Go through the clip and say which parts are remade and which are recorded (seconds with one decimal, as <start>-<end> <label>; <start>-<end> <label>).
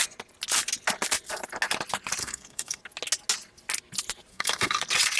0.0-2.2 recorded; 2.2-2.8 remade; 2.8-4.3 recorded; 4.3-4.8 remade; 4.8-5.2 recorded